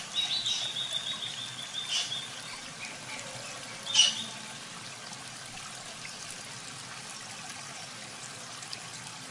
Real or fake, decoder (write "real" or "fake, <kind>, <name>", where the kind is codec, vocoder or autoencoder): real